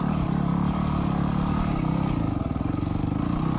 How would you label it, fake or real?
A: real